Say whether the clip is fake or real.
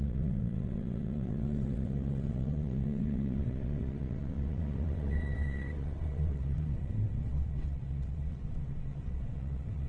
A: fake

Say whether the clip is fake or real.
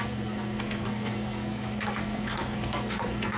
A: fake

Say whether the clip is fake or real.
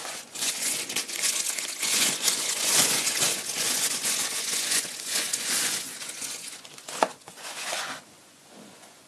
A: fake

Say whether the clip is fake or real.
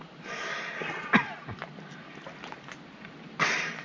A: real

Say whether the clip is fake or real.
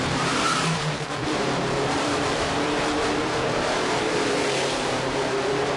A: fake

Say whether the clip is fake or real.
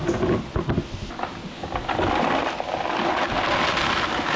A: real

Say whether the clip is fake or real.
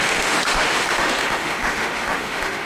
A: fake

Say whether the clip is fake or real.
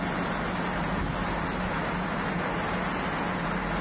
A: real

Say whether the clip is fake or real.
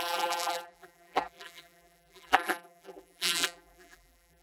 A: fake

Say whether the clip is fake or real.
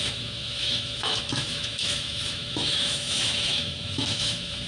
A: fake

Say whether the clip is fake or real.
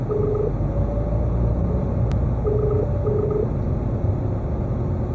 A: real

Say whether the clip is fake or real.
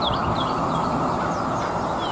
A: real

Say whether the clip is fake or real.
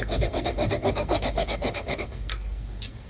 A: fake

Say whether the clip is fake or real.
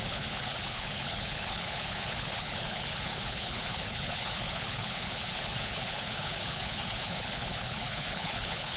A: fake